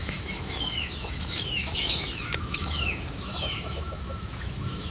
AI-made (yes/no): yes